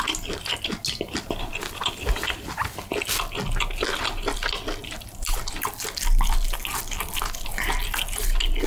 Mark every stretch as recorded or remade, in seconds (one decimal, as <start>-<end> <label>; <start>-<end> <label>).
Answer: 0.0-4.8 recorded; 4.8-5.4 remade; 5.4-8.7 recorded

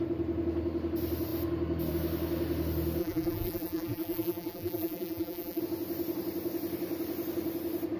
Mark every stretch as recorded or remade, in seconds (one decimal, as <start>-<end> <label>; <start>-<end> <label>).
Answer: 0.0-3.0 recorded; 3.0-5.6 remade; 5.6-8.0 recorded

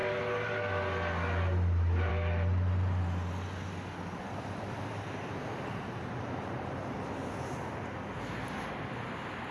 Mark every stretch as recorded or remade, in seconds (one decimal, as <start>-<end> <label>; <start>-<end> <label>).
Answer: 0.0-4.3 recorded; 4.3-6.6 remade; 6.6-9.5 recorded

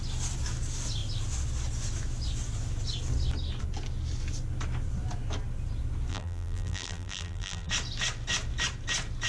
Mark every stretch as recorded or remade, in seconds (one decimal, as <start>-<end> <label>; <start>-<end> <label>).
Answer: 0.0-6.1 recorded; 6.1-7.7 remade; 7.7-9.3 recorded

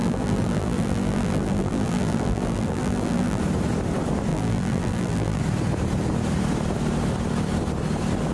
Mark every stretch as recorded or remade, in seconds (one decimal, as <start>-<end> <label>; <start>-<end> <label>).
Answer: 0.0-3.4 remade; 3.4-4.3 recorded; 4.3-5.4 remade; 5.4-8.3 recorded